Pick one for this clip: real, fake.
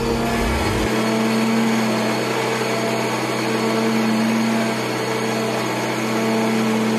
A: real